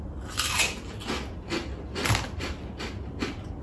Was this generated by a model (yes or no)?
no